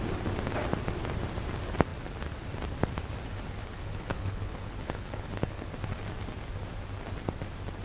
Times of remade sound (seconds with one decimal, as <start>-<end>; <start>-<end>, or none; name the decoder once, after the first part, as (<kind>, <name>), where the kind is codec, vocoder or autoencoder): 3.6-5.7 (codec, HILCodec)